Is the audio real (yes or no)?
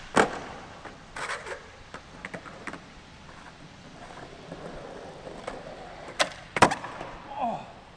no